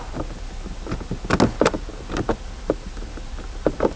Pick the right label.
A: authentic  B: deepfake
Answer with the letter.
A